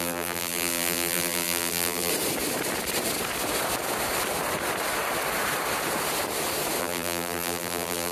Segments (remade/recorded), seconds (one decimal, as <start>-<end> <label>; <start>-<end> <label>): 0.0-2.1 remade; 2.1-6.8 recorded; 6.8-8.1 remade